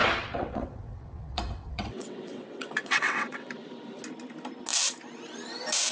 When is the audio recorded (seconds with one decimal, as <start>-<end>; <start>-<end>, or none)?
3.5-5.9